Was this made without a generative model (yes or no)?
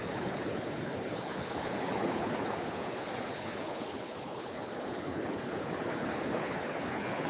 no